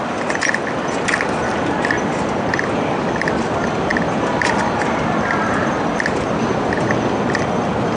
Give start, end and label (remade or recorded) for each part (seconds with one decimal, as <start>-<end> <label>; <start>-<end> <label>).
0.0-8.0 recorded